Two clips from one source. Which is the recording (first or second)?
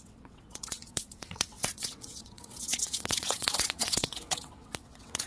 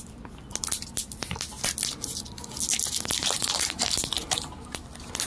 second